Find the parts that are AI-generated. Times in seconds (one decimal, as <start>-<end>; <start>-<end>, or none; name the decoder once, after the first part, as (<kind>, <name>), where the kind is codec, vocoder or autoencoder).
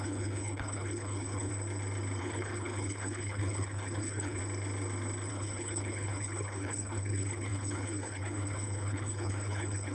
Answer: 0.0-1.5 (codec, HILCodec); 2.2-4.4; 5.3-9.9